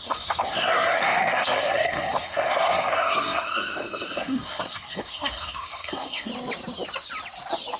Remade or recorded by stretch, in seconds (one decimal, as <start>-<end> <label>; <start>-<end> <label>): 0.0-6.3 remade; 6.3-7.8 recorded